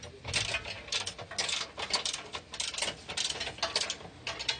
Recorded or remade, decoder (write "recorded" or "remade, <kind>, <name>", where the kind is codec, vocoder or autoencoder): recorded